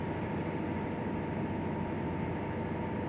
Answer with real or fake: real